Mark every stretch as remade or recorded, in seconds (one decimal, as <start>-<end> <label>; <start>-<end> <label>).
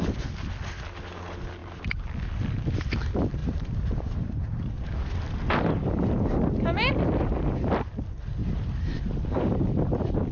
0.0-3.4 recorded; 3.4-4.9 remade; 4.9-8.4 recorded; 8.4-9.0 remade; 9.0-10.3 recorded